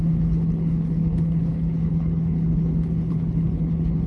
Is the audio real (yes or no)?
no